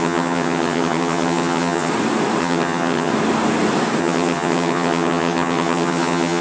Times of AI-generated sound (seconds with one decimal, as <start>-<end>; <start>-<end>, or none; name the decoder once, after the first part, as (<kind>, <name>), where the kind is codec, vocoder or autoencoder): 0.0-1.9 (vocoder, HiFi-GAN); 2.4-3.1; 4.0-6.4